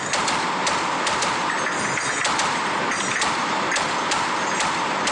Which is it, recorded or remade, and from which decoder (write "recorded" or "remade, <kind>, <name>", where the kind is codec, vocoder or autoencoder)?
recorded